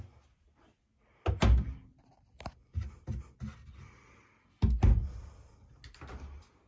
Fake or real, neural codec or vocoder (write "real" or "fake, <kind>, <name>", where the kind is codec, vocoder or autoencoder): real